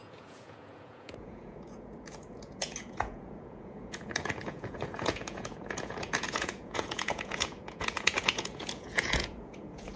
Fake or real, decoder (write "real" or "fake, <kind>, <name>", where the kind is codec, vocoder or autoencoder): fake, vocoder, Vocos